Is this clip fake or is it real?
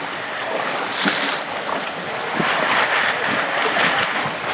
real